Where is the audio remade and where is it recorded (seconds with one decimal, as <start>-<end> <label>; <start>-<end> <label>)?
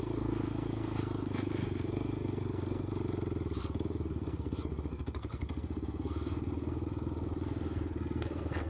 0.0-2.9 remade; 2.9-3.6 recorded; 3.6-8.7 remade